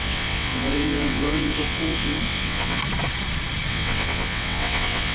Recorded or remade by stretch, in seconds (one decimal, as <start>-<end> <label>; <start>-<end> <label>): 0.0-2.8 remade; 2.8-3.7 recorded; 3.7-5.1 remade